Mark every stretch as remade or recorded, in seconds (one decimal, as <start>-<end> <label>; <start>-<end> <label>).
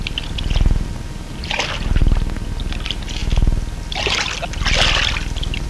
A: 0.0-5.7 recorded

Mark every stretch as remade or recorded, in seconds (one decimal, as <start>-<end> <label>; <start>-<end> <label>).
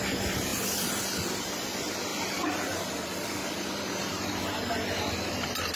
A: 0.0-0.5 recorded; 0.5-1.0 remade; 1.0-2.1 recorded; 2.1-5.1 remade; 5.1-5.8 recorded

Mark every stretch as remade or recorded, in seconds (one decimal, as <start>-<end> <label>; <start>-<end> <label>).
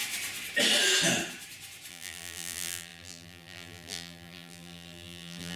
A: 0.0-1.9 recorded; 1.9-5.6 remade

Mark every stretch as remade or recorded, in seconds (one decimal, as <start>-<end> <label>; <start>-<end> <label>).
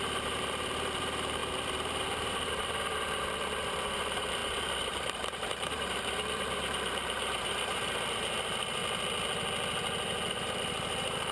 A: 0.0-8.8 remade; 8.8-10.3 recorded; 10.3-11.3 remade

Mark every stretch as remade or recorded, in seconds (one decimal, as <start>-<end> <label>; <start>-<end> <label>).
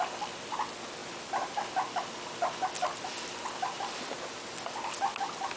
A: 0.0-5.6 recorded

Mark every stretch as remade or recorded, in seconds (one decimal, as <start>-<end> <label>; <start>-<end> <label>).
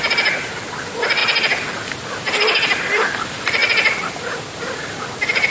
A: 0.0-3.6 recorded; 3.6-4.4 remade; 4.4-5.5 recorded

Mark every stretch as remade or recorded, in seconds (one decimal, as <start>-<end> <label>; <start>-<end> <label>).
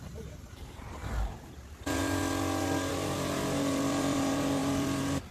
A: 0.0-1.0 remade; 1.0-1.5 recorded; 1.5-2.0 remade; 2.0-2.9 recorded; 2.9-5.3 remade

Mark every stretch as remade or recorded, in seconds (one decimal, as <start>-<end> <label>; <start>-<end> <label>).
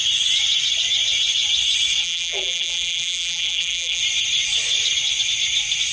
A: 0.0-2.0 recorded; 2.0-4.0 remade; 4.0-5.9 recorded